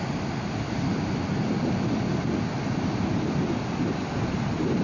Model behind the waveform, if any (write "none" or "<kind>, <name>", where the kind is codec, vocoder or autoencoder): none